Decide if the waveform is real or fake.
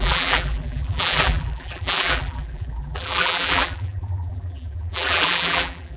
fake